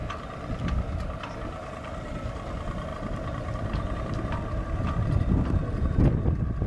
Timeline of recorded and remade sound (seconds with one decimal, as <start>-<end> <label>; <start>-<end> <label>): 0.0-2.9 recorded; 2.9-4.4 remade; 4.4-6.7 recorded